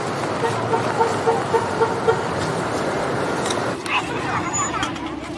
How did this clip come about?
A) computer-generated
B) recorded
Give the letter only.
B